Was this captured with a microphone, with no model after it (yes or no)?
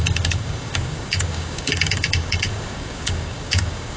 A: no